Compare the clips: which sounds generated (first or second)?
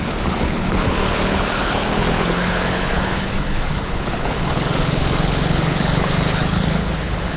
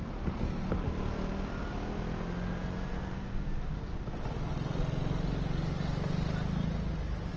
first